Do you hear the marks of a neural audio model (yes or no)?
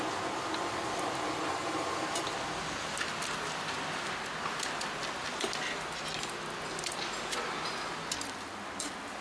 no